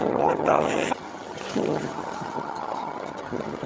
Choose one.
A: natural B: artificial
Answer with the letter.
B